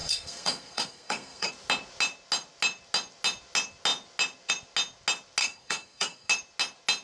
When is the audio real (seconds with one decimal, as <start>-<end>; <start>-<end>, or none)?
1.5-5.4; 6.3-7.0